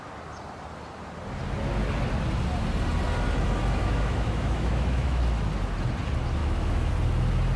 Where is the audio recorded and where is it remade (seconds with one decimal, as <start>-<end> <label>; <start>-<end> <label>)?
0.0-3.8 recorded; 3.8-5.2 remade; 5.2-6.4 recorded; 6.4-6.9 remade; 6.9-7.6 recorded